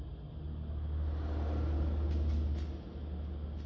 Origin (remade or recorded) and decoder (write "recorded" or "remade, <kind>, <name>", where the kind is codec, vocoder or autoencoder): recorded